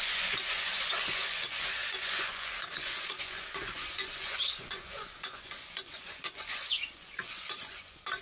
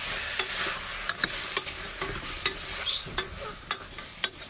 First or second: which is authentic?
second